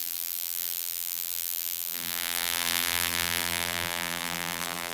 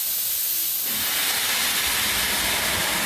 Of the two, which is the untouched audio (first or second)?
second